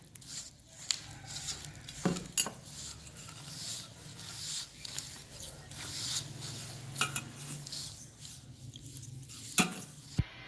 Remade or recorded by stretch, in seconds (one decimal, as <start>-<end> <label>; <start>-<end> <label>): 0.0-10.5 recorded